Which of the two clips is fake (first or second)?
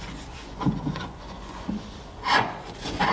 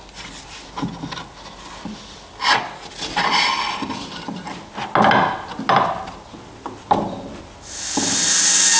first